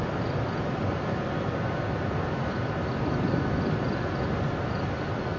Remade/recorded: recorded